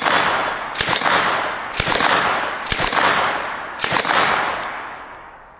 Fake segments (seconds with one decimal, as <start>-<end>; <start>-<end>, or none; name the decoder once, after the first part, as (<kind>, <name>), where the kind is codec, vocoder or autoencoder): 4.5-5.6 (codec, DAC)